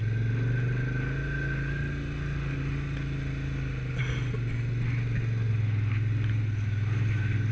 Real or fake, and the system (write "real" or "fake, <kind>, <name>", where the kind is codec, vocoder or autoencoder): real